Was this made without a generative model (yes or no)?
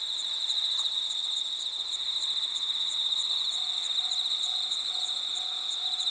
yes